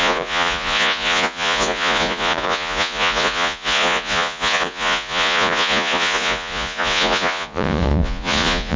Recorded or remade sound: remade